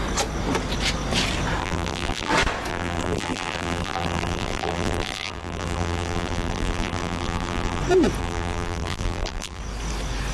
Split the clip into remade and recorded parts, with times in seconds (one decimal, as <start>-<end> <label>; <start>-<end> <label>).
0.0-1.6 recorded; 1.6-2.3 remade; 2.3-2.7 recorded; 2.7-7.8 remade; 7.8-8.2 recorded; 8.2-9.6 remade; 9.6-10.3 recorded